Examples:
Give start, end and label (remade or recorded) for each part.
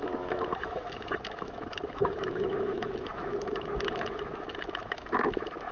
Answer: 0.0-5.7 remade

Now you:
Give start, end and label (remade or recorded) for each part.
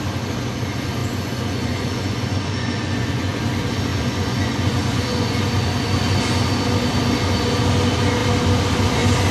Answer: 0.0-1.0 recorded; 1.0-3.4 remade; 3.4-3.9 recorded; 3.9-5.4 remade; 5.4-9.3 recorded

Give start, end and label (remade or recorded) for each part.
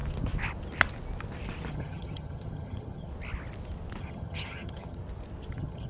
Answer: 0.0-1.7 recorded; 1.7-3.1 remade; 3.1-4.0 recorded; 4.0-5.0 remade; 5.0-5.5 recorded; 5.5-5.9 remade